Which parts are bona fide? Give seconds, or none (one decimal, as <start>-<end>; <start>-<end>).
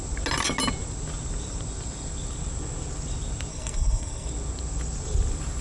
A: 0.0-3.5; 4.3-5.6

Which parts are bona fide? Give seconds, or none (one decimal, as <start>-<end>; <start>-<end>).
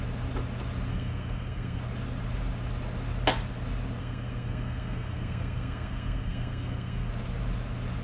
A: 0.0-0.9; 1.8-4.0; 7.1-8.0